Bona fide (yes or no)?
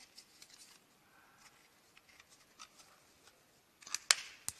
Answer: yes